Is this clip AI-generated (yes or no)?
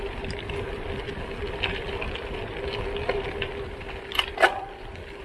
no